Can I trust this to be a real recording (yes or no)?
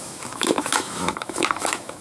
no